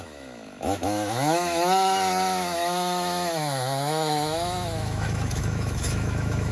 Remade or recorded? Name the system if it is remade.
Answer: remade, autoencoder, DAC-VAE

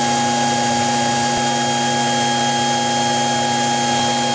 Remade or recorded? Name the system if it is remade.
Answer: recorded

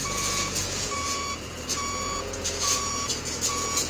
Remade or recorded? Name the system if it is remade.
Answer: remade, vocoder, Vocos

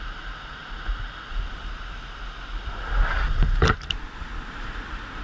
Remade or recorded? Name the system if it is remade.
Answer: recorded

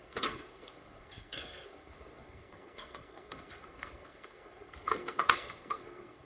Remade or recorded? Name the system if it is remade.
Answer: remade, codec, SNAC